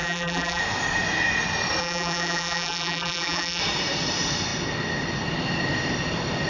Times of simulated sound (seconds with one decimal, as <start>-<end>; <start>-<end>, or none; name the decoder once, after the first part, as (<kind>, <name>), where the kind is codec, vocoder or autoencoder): 0.0-0.6 (vocoder, BigVGAN v2); 1.8-3.6